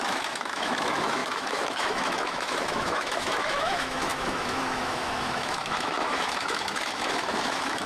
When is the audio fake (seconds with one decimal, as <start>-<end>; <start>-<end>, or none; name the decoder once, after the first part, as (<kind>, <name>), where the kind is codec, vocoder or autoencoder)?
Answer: 0.0-7.9 (autoencoder, DAC-VAE)